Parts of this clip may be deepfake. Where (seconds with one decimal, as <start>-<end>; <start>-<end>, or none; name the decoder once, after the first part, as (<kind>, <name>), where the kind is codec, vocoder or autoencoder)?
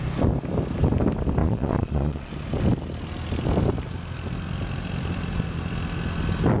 1.4-2.3 (vocoder, Vocos)